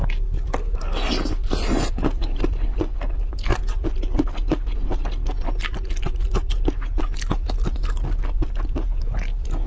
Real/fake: real